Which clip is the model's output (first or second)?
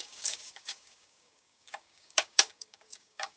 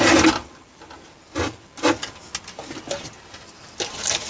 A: first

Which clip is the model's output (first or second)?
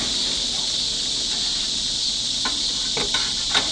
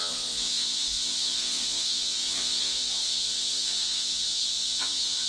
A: second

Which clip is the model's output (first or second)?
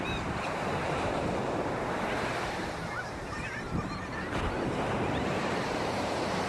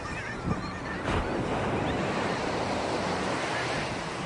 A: first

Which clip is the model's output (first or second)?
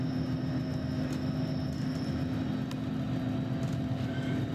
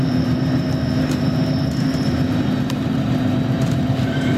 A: second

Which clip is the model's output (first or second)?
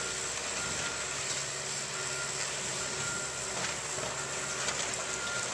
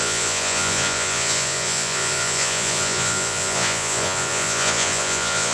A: second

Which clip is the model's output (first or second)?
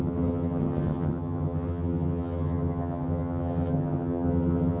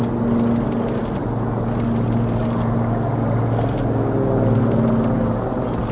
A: first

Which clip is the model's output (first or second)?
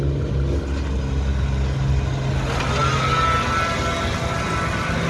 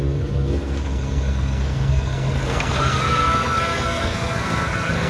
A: second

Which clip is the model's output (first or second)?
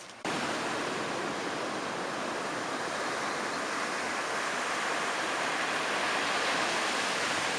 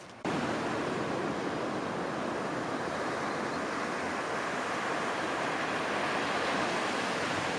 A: first